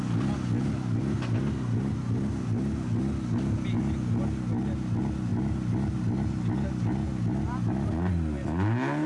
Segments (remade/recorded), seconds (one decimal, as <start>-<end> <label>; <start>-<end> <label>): 0.0-9.1 recorded